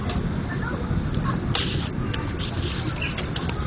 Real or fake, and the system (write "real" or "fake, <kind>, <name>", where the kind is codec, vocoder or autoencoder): real